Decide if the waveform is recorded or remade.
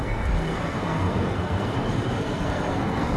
remade